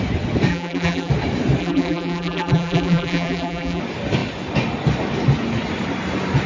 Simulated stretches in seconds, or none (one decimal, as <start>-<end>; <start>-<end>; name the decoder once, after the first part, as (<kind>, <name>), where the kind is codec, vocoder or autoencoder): 0.5-1.1 (vocoder, BigVGAN v2); 1.6-3.8